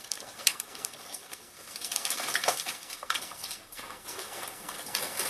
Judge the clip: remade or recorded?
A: remade